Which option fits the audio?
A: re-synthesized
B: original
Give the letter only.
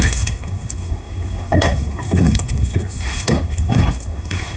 A